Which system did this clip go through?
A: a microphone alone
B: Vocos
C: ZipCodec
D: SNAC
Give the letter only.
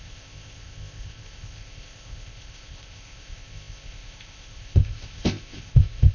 C